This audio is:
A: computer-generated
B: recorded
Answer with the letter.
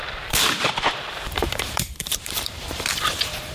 A